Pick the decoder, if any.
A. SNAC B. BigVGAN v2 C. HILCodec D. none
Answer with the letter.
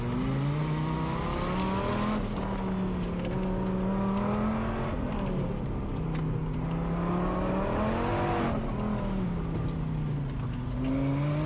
D